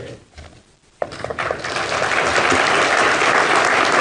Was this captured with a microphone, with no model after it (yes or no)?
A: yes